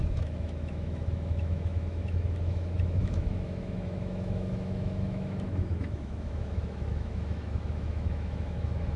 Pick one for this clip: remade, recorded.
remade